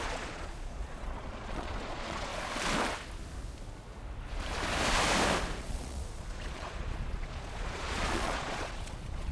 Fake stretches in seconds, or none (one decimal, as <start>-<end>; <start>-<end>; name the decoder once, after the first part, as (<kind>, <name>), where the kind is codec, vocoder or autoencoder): 0.0-2.3 (vocoder, Vocos); 5.6-9.3